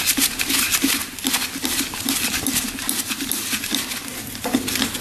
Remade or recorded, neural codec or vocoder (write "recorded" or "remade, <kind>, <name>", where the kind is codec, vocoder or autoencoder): recorded